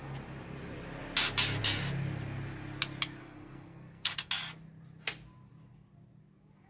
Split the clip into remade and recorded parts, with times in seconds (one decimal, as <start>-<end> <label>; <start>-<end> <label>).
0.0-3.2 recorded; 3.2-4.3 remade; 4.3-6.7 recorded